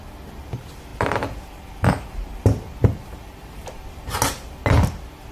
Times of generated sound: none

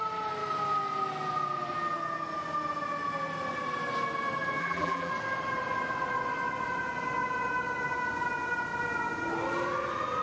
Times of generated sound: 4.6-5.1 (vocoder, BigVGAN v2)

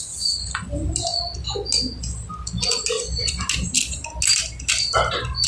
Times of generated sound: none

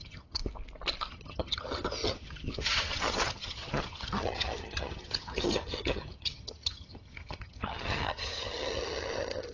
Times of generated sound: 0.0-0.4 (vocoder, HiFi-GAN); 1.1-9.5

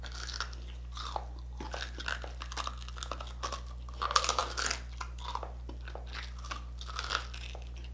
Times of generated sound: none

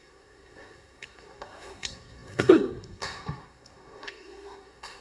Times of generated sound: 0.0-5.0 (codec, SNAC)